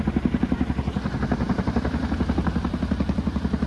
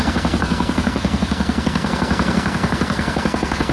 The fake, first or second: second